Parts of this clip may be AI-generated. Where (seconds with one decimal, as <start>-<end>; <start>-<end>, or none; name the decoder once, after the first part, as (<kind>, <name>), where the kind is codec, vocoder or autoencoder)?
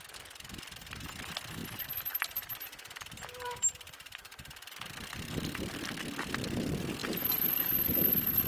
1.6-5.8 (vocoder, BigVGAN v2); 7.0-8.0